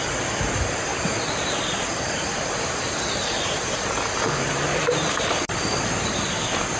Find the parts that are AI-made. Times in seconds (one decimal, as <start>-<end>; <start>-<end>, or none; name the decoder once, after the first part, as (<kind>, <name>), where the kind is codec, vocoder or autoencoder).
none